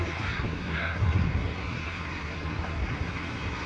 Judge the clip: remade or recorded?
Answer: remade